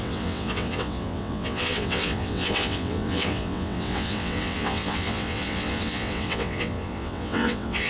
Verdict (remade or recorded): remade